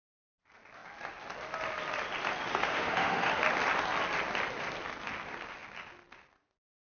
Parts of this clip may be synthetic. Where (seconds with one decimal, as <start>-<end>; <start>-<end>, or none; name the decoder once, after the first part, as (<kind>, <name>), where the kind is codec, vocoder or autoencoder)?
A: 2.5-3.3 (autoencoder, DAC-VAE)